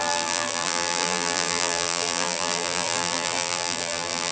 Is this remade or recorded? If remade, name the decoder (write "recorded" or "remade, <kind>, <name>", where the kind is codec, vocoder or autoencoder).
remade, vocoder, BigVGAN v2